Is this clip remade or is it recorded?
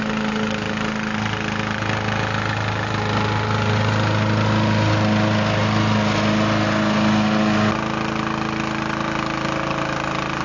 recorded